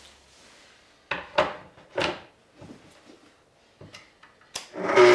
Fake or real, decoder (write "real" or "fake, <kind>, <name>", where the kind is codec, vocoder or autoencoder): real